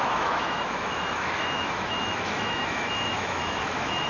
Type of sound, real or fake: fake